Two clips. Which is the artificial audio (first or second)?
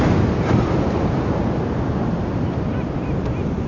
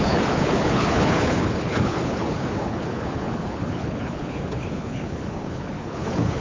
second